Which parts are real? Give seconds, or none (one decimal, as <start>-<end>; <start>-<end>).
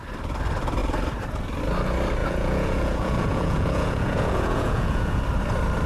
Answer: 0.0-2.2; 5.2-5.9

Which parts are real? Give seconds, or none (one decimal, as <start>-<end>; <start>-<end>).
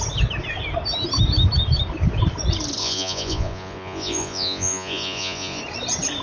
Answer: 0.0-2.8; 5.6-6.2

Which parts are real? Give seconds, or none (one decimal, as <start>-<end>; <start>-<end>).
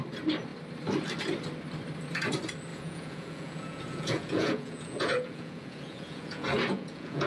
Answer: 0.0-2.7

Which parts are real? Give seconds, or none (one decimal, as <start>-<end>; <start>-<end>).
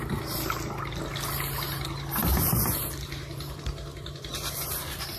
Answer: 0.0-5.2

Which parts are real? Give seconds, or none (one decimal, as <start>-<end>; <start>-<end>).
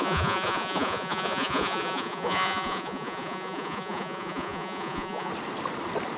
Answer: 5.3-6.2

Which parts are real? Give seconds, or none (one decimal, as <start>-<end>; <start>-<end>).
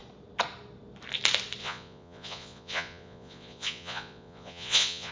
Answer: 0.0-1.6